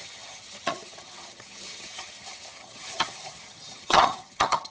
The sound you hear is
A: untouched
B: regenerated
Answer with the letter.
B